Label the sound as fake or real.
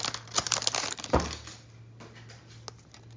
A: real